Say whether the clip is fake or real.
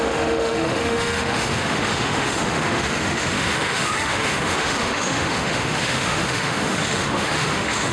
fake